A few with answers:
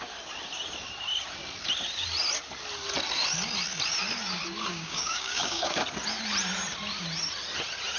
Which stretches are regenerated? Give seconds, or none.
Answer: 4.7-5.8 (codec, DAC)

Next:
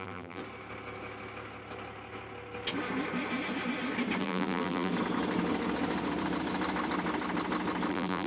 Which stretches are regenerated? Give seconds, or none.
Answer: 0.0-0.4 (vocoder, BigVGAN v2); 4.2-4.9; 7.9-8.3

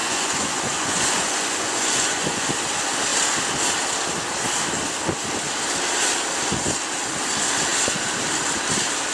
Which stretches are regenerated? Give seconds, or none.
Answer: 0.0-2.5 (vocoder, Vocos)